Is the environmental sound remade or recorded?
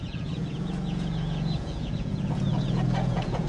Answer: remade